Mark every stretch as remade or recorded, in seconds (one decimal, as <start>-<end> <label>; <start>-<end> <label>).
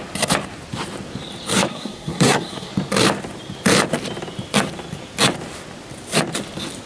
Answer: 0.0-1.7 recorded; 1.7-2.7 remade; 2.7-6.9 recorded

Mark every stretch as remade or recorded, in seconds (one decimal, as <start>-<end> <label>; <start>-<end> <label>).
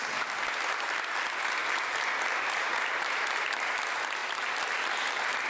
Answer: 0.0-4.2 recorded; 4.2-5.5 remade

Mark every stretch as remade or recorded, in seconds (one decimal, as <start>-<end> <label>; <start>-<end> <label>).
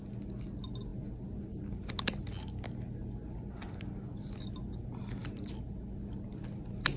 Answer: 0.0-7.0 recorded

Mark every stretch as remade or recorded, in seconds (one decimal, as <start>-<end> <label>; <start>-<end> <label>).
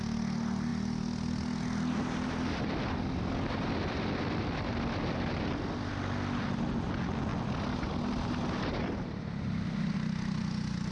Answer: 0.0-10.9 recorded